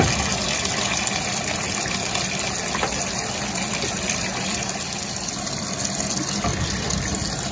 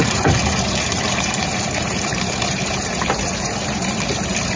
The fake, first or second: second